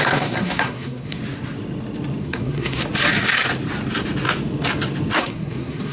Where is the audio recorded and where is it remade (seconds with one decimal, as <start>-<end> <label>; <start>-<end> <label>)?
0.0-1.2 remade; 1.2-2.2 recorded; 2.2-2.8 remade; 2.8-5.2 recorded; 5.2-5.9 remade

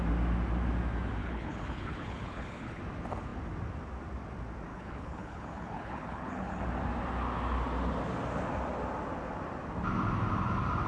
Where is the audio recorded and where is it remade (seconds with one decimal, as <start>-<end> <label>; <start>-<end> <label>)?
0.0-1.2 recorded; 1.2-2.8 remade; 2.8-4.7 recorded; 4.7-6.6 remade; 6.6-10.9 recorded

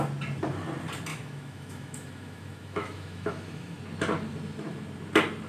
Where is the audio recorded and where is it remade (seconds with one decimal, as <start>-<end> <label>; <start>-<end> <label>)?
0.0-1.1 recorded; 1.1-3.8 remade; 3.8-5.5 recorded

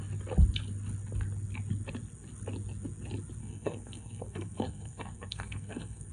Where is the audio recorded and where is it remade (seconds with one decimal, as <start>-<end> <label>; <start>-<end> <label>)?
0.0-3.4 recorded; 3.4-6.1 remade

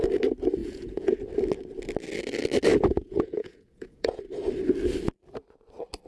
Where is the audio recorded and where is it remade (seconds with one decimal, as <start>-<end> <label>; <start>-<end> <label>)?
0.0-0.6 recorded; 0.6-1.2 remade; 1.2-2.7 recorded; 2.7-4.2 remade; 4.2-6.1 recorded

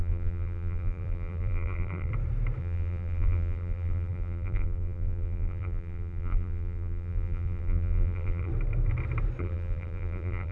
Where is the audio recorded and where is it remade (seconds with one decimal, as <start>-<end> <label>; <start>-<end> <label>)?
0.0-2.1 remade; 2.1-2.6 recorded; 2.6-8.5 remade; 8.5-9.4 recorded; 9.4-10.5 remade

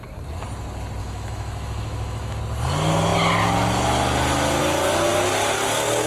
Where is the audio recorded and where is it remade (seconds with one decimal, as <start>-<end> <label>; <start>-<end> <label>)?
0.0-1.0 recorded; 1.0-2.4 remade; 2.4-6.1 recorded